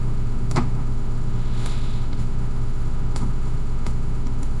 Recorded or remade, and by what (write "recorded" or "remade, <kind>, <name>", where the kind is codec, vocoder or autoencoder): remade, autoencoder, DAC-VAE